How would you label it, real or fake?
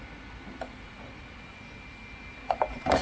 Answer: real